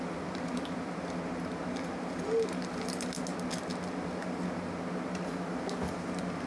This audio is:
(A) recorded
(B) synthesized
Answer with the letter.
A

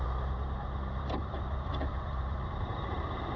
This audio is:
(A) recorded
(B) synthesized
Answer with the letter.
B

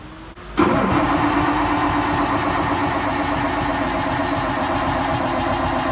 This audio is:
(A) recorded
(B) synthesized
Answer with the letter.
A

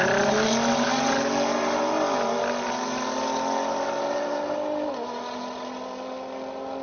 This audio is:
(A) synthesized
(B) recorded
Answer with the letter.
B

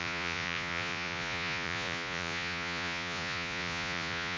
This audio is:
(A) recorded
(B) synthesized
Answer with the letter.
B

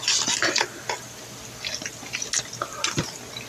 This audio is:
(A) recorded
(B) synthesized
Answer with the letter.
A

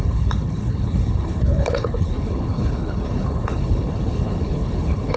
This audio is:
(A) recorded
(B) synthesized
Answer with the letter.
B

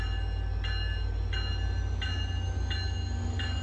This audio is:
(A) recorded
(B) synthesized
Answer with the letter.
A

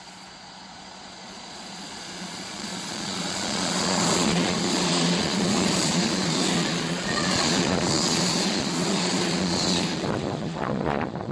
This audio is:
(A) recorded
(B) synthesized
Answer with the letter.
B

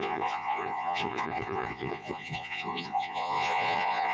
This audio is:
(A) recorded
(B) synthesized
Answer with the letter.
B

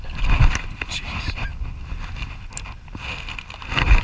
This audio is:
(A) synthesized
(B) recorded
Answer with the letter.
B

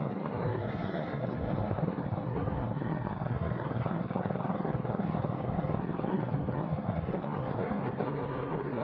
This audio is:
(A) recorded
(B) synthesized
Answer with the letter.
B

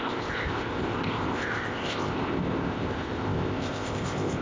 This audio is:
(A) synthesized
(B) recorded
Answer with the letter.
A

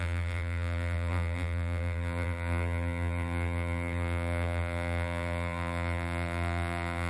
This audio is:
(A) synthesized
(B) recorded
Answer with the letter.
A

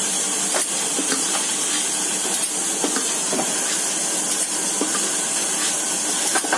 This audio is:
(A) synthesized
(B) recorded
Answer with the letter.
B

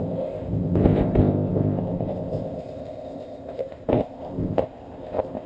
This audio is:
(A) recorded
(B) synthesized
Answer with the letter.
B